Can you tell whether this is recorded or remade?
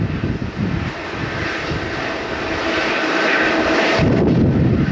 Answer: recorded